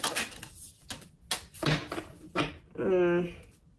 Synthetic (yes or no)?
no